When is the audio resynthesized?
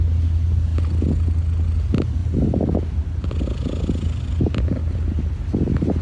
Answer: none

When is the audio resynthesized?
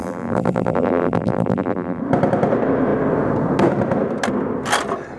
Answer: 0.0-2.0 (vocoder, BigVGAN v2)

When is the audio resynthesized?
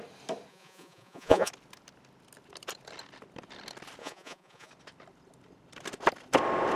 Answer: 0.5-1.5 (vocoder, Vocos); 4.0-4.7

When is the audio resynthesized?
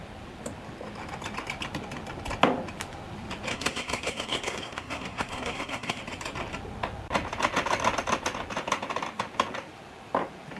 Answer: 3.5-6.0 (codec, SNAC)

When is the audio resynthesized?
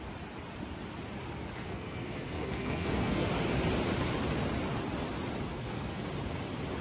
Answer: 1.6-3.3 (codec, SNAC); 5.5-6.0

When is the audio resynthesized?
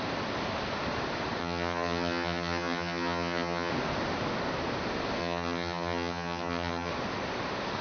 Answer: 1.4-3.7 (vocoder, HiFi-GAN); 5.2-6.9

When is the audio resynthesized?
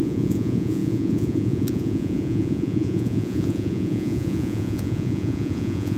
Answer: 0.0-6.0 (vocoder, Vocos)